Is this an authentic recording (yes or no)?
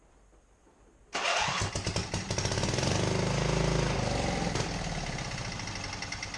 yes